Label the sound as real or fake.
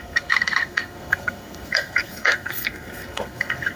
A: fake